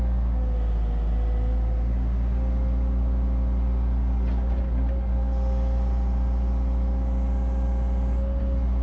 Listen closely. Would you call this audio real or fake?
real